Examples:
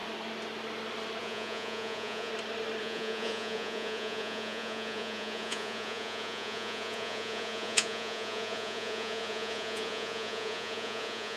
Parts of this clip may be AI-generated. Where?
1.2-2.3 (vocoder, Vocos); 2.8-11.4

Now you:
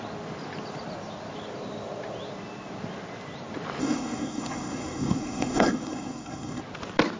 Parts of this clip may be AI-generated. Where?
3.8-6.6 (codec, SNAC)